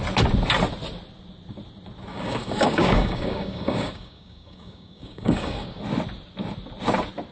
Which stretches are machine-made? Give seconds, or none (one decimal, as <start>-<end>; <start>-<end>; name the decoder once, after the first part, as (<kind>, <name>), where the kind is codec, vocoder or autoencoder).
2.1-5.8 (codec, DAC)